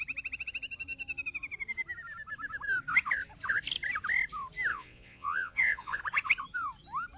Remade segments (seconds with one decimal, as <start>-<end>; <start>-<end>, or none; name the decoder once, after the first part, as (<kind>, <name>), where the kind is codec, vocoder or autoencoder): 4.7-6.0 (vocoder, Vocos)